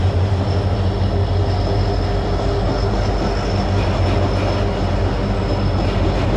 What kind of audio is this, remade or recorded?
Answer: recorded